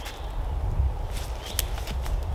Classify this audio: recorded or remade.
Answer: recorded